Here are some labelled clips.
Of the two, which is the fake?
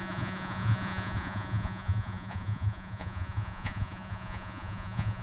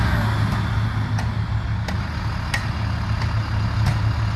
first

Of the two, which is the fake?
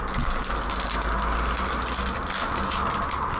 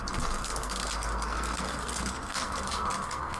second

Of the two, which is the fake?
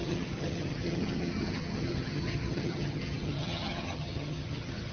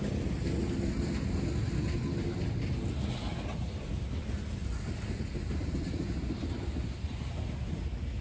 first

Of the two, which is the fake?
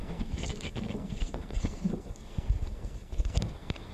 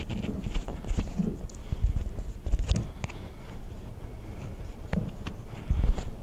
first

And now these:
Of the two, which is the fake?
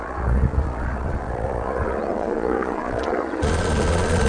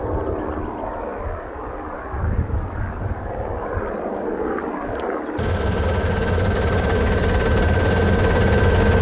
first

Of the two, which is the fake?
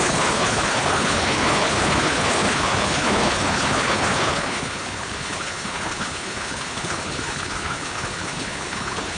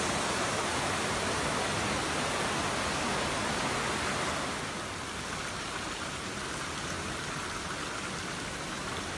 first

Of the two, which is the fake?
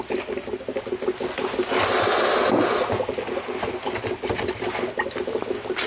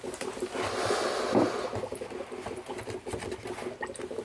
second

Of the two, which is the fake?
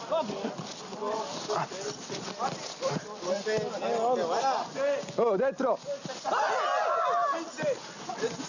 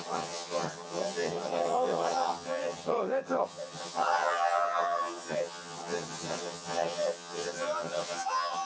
second